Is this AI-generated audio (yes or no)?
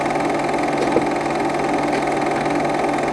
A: no